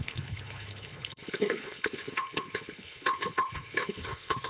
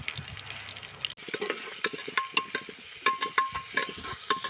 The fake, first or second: first